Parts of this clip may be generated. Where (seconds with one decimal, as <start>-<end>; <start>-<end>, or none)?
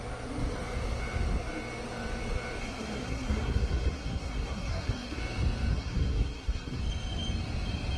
2.6-5.2; 5.7-6.8